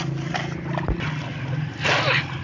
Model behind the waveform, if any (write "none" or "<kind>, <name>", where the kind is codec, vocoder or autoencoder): none